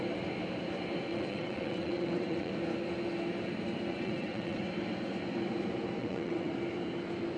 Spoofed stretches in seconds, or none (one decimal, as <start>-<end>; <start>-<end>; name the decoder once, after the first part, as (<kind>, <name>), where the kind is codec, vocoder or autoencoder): 1.1-2.5 (vocoder, WaveNeXt); 3.9-4.6; 6.0-6.5